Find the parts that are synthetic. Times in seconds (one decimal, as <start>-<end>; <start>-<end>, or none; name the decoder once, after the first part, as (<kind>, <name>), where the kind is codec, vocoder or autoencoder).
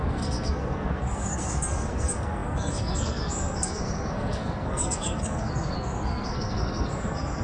0.0-7.4 (codec, SNAC)